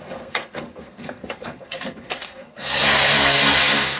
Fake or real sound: fake